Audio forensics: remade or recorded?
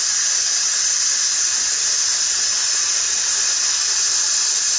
recorded